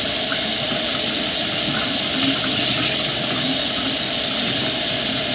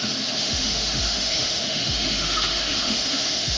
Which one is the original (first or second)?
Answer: first